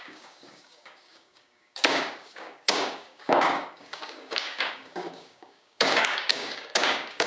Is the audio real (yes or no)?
no